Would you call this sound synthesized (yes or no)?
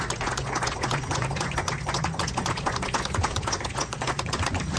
yes